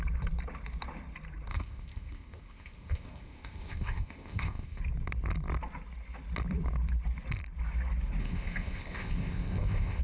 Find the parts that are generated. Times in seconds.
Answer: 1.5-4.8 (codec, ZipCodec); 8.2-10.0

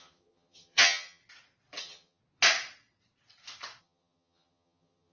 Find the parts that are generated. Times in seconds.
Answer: 0.0-1.2 (vocoder, HiFi-GAN); 1.8-2.2; 3.8-5.1

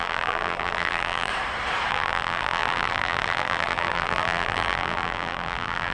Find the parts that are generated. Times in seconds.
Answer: 0.0-1.3 (vocoder, BigVGAN v2); 1.9-5.9

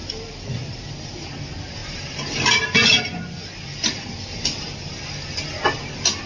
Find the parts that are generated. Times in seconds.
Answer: none

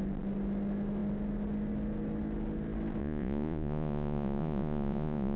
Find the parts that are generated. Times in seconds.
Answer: 3.0-5.4 (vocoder, Vocos)